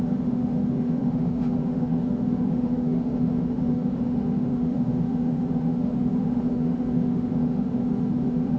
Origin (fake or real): fake